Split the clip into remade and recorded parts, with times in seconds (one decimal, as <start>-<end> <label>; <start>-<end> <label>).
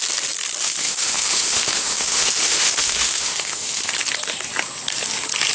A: 0.0-0.6 recorded; 0.6-3.9 remade; 3.9-5.5 recorded